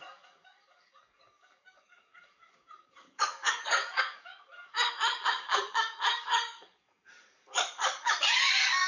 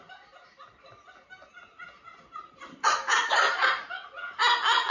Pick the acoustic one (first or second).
second